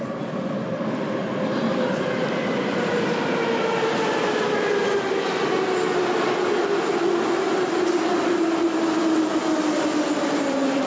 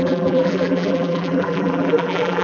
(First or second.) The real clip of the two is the first